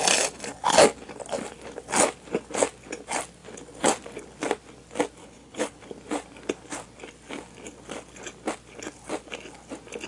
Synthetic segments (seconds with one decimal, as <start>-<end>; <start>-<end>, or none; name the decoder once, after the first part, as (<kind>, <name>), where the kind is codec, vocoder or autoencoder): 5.2-5.8 (codec, HILCodec)